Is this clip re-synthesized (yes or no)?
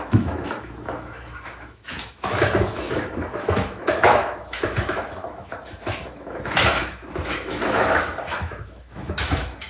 yes